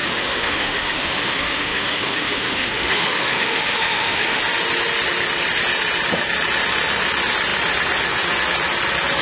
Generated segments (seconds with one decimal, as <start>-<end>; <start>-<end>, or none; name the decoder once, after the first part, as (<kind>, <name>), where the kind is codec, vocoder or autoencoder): 0.0-4.4 (autoencoder, DAC-VAE)